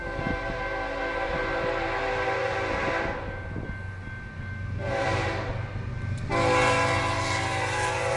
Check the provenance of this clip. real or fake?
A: real